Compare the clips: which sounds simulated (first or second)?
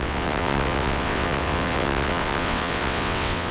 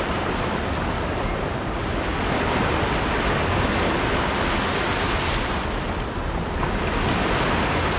first